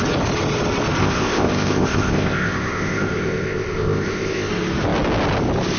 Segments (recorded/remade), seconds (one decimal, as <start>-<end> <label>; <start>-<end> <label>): 0.0-1.0 recorded; 1.0-4.5 remade; 4.5-5.8 recorded